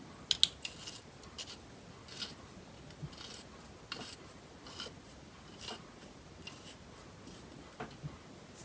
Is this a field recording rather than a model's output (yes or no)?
yes